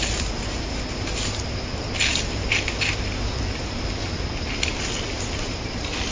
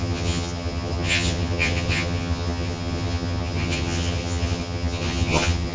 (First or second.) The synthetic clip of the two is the second